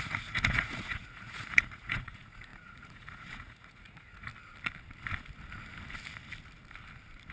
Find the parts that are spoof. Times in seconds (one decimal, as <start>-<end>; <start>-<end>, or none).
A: 0.0-4.3